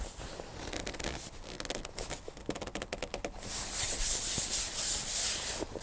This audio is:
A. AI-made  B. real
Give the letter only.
B